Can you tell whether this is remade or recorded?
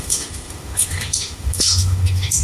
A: remade